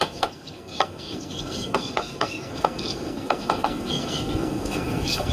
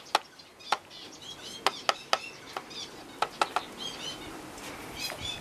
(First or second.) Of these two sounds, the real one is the second